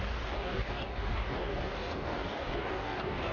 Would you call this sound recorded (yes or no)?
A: no